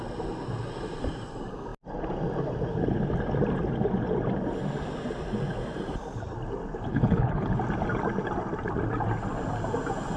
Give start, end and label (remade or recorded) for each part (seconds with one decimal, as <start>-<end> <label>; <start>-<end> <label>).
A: 0.0-6.9 recorded; 6.9-7.6 remade; 7.6-10.2 recorded